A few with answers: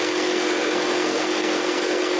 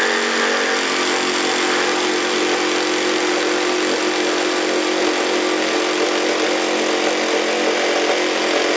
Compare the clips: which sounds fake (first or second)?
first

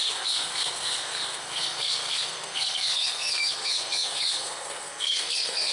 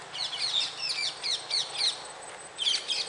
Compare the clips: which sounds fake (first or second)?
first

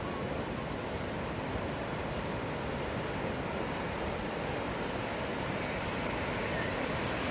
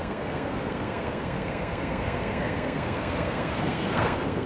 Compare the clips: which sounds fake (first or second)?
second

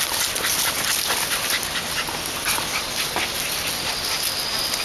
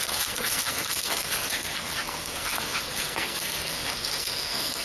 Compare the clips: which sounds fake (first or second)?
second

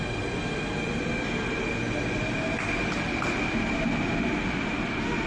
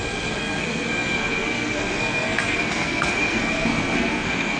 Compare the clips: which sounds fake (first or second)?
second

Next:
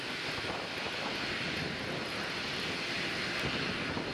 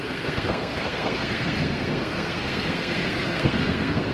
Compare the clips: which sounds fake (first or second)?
second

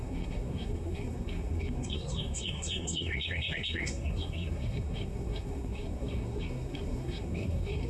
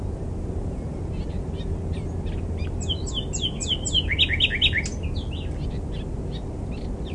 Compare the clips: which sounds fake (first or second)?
first